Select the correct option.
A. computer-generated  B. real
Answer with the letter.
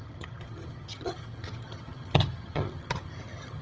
A